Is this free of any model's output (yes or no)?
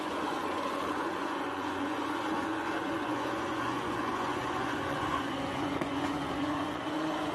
no